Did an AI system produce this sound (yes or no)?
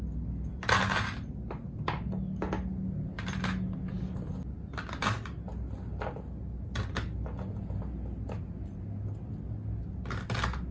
no